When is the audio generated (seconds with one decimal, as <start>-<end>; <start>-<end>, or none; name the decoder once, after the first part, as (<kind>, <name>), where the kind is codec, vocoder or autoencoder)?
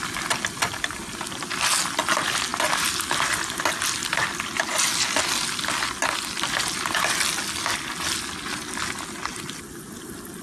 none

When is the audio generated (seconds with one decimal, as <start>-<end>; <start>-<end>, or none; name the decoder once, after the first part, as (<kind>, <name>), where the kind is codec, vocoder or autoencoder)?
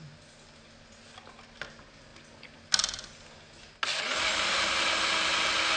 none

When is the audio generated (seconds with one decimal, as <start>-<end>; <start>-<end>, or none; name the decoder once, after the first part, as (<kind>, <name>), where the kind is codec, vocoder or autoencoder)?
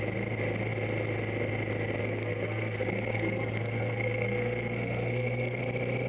2.0-5.6 (codec, SNAC)